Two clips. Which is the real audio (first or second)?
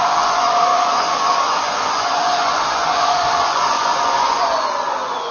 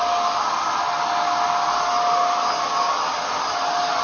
second